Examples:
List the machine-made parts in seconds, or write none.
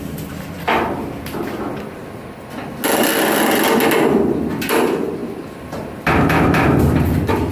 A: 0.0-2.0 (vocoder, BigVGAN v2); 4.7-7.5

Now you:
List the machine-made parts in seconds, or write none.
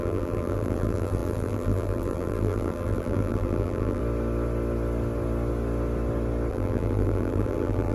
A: 0.0-4.0 (vocoder, BigVGAN v2); 6.5-7.9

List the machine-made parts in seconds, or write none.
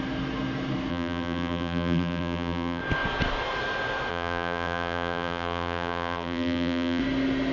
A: 0.9-2.8 (vocoder, BigVGAN v2); 4.1-7.0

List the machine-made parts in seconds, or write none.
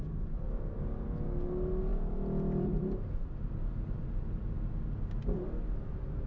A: 1.9-3.3 (vocoder, BigVGAN v2)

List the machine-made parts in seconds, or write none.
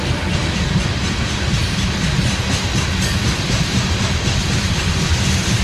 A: 0.0-5.6 (vocoder, BigVGAN v2)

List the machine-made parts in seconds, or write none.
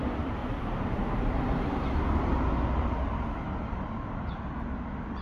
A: 0.4-1.9 (vocoder, BigVGAN v2)